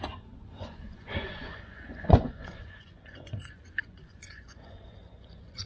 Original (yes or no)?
no